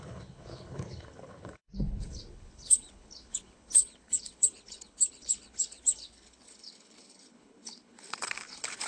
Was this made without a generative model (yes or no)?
no